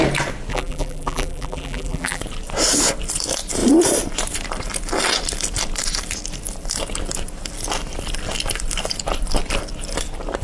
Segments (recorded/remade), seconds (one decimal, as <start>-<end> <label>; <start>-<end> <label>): 0.0-0.5 recorded; 0.5-2.2 remade; 2.2-10.4 recorded